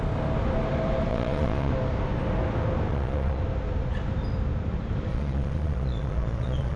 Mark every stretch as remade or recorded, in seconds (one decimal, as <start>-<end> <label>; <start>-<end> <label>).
0.0-1.1 recorded; 1.1-1.7 remade; 1.7-2.9 recorded; 2.9-3.4 remade; 3.4-5.1 recorded; 5.1-6.8 remade